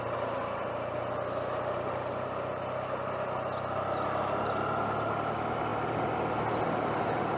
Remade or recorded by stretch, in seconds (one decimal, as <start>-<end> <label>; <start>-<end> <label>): 0.0-7.4 recorded